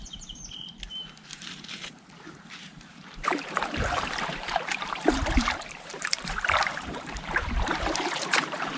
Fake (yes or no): yes